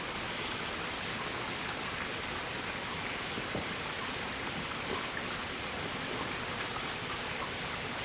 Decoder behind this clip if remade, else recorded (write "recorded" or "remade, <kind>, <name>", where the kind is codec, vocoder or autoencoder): recorded